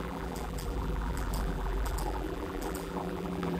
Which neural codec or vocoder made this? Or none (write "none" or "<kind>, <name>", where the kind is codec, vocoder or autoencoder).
vocoder, BigVGAN v2